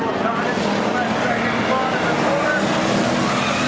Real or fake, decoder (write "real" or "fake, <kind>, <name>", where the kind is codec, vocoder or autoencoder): real